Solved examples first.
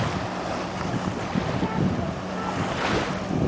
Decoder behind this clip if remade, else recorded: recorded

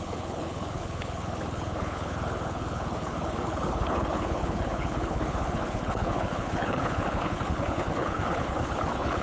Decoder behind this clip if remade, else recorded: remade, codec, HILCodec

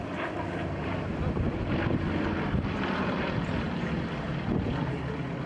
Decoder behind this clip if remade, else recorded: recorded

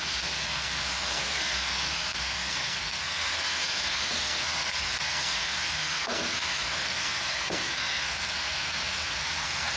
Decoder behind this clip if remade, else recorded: remade, codec, SNAC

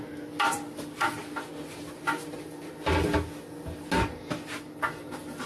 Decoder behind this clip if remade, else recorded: recorded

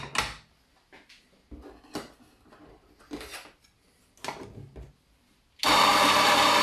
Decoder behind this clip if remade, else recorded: recorded